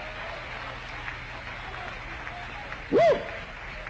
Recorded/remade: recorded